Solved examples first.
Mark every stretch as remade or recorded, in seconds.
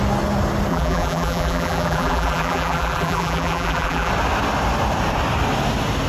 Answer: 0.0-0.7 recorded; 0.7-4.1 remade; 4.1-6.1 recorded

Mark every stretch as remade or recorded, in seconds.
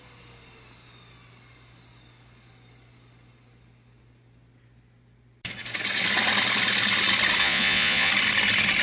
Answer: 0.0-7.4 recorded; 7.4-8.1 remade; 8.1-8.8 recorded